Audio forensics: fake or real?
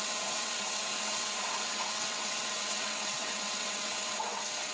fake